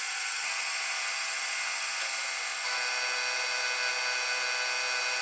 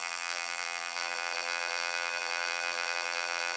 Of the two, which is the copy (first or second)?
second